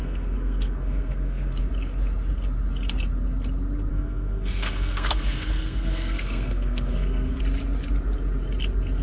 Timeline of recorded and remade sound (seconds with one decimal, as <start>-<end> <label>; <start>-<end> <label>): 0.0-1.6 remade; 1.6-3.9 recorded; 3.9-7.4 remade; 7.4-9.0 recorded